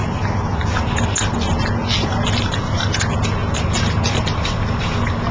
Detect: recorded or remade recorded